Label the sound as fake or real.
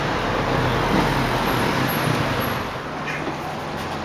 real